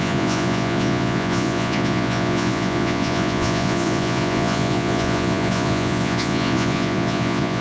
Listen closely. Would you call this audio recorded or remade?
remade